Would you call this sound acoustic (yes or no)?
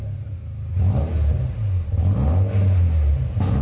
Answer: yes